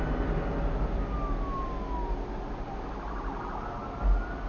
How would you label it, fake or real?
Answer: real